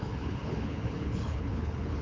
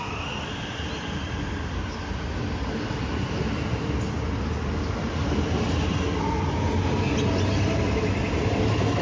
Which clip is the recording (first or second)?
second